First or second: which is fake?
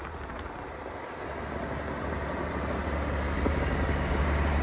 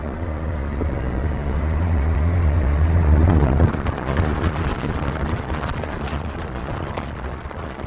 second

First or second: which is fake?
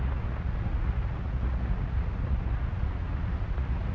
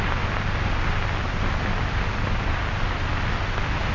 first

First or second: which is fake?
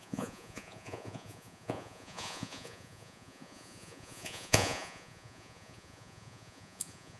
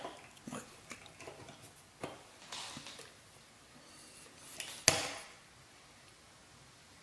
first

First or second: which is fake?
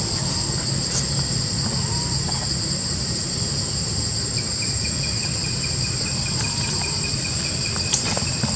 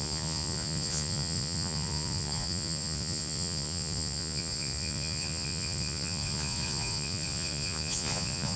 second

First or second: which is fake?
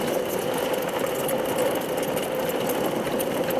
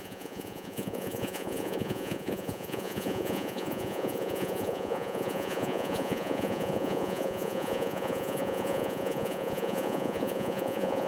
second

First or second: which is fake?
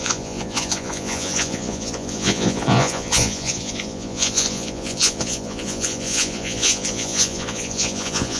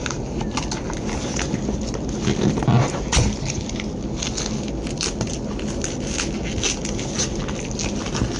first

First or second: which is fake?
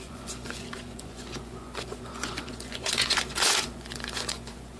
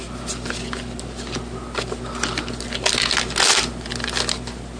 first